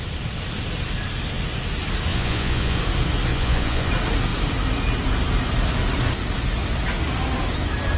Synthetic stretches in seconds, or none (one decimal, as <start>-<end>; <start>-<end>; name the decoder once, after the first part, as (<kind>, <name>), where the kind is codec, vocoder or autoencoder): 2.1-2.8 (vocoder, Vocos); 3.3-3.9